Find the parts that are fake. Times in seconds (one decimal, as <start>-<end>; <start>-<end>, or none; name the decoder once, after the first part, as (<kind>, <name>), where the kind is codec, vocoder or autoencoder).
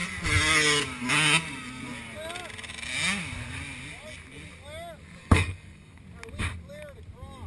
5.2-6.0 (codec, SNAC)